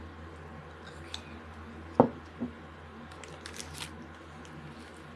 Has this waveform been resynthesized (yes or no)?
no